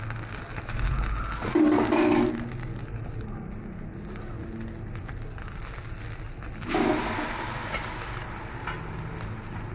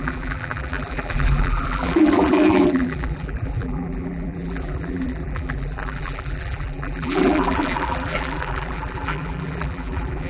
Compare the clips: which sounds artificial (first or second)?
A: second